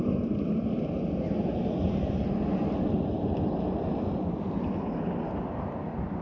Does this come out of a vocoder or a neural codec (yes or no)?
no